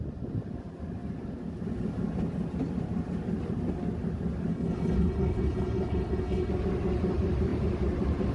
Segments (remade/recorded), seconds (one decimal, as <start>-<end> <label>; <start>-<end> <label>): 0.0-4.5 recorded; 4.5-6.5 remade; 6.5-8.3 recorded